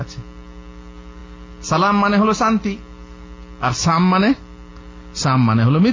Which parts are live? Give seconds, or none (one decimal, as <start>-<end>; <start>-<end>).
0.0-5.9